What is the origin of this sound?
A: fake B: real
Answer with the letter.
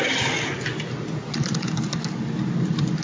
B